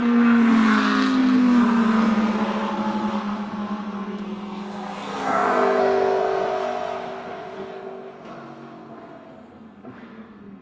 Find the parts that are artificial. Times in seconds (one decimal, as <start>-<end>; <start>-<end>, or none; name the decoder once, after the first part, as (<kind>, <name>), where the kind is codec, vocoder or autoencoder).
0.0-10.6 (codec, SNAC)